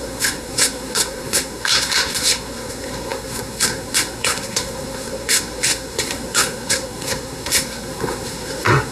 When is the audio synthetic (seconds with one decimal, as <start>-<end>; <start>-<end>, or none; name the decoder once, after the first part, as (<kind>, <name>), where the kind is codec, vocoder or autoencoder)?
0.0-8.9 (codec, SNAC)